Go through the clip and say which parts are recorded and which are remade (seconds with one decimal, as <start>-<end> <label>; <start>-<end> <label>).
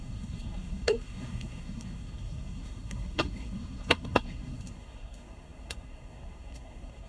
0.0-7.1 remade